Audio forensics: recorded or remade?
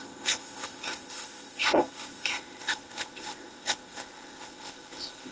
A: remade